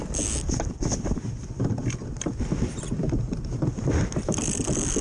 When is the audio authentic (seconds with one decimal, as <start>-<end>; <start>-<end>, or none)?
0.0-5.0